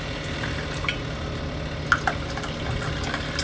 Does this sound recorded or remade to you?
recorded